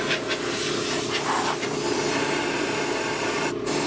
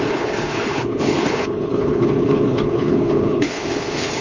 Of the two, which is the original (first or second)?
first